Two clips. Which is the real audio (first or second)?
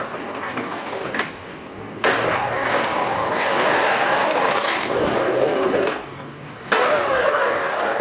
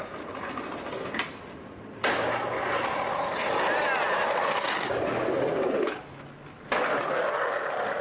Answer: second